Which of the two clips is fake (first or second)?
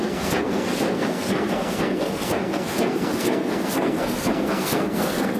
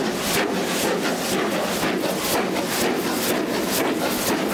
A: first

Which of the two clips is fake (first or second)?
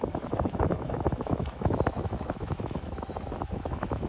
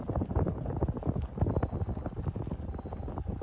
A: first